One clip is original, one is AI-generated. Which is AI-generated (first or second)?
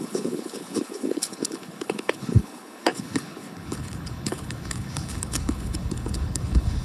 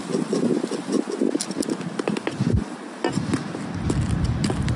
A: first